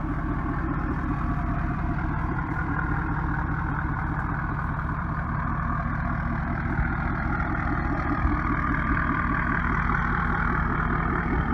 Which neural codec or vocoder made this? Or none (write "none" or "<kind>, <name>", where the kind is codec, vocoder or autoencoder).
vocoder, BigVGAN v2